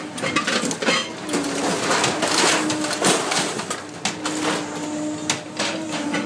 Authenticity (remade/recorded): recorded